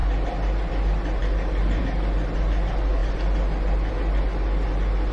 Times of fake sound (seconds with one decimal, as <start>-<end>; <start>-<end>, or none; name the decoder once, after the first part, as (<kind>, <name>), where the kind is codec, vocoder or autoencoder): none